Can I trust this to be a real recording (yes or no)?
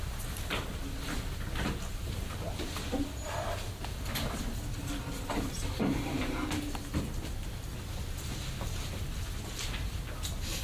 yes